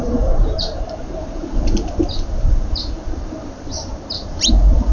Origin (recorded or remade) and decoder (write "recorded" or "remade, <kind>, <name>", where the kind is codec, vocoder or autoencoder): remade, vocoder, BigVGAN v2